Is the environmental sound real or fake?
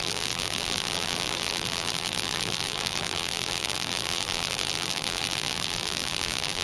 fake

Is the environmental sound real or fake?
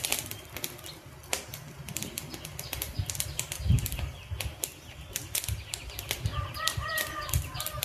real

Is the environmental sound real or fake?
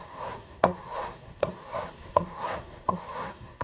fake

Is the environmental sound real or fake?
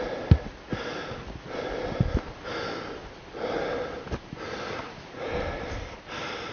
real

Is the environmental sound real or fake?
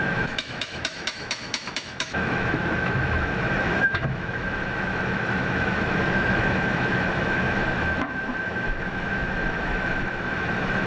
fake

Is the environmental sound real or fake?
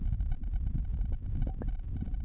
real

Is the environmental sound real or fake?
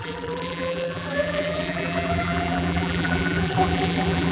fake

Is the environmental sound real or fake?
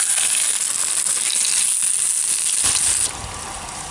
real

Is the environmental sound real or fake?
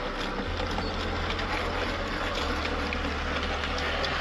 real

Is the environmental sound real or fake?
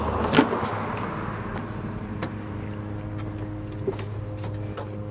real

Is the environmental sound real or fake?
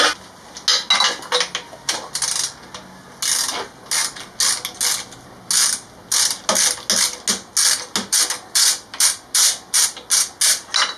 real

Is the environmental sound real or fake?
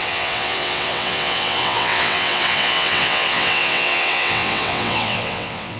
fake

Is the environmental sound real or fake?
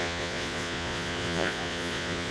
fake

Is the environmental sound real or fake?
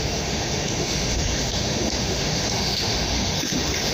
fake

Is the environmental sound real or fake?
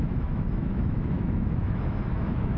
fake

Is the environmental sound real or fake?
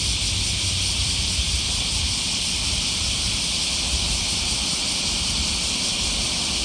fake